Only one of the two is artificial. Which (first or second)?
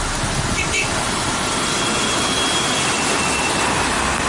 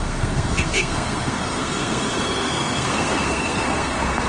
second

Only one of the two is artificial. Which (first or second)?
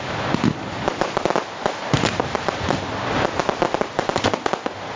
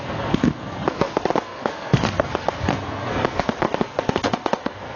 second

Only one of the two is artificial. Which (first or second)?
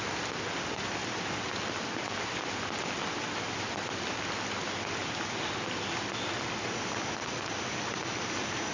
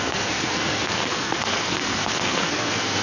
second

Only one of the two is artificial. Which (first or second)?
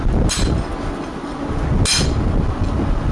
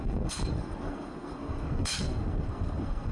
second